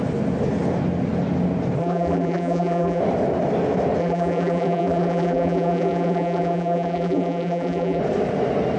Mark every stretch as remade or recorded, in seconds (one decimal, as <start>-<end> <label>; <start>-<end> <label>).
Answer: 0.0-1.8 recorded; 1.8-3.0 remade; 3.0-4.0 recorded; 4.0-8.0 remade; 8.0-8.8 recorded